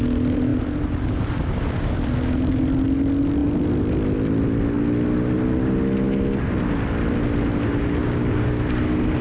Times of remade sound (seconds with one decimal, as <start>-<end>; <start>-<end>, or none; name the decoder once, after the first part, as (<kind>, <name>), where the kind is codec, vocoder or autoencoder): 8.0-8.6 (codec, DAC)